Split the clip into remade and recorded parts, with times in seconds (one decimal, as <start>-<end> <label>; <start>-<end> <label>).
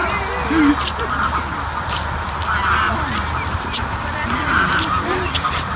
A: 0.0-3.2 recorded; 3.2-5.8 remade